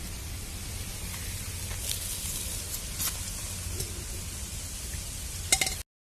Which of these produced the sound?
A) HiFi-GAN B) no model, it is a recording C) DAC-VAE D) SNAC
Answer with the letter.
B